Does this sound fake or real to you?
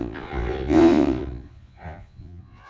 fake